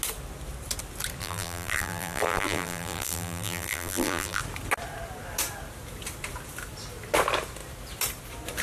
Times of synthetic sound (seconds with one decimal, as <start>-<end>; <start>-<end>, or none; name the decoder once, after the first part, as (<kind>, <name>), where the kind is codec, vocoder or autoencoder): 1.2-4.4 (vocoder, BigVGAN v2)